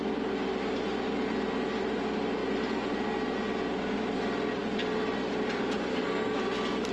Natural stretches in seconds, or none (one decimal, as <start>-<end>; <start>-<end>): 0.0-5.9; 6.4-6.9